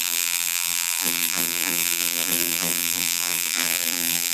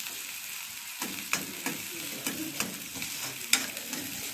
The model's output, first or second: first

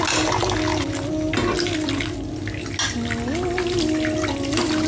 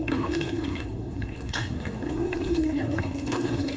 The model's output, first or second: second